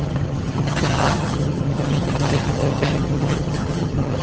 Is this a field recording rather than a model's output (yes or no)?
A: no